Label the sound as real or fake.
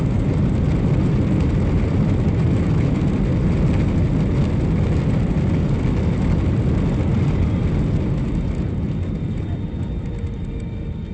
real